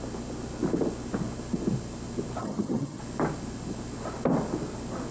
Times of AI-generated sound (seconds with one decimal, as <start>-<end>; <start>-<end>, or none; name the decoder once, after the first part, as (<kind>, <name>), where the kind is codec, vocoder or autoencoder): 2.4-3.0 (vocoder, HiFi-GAN)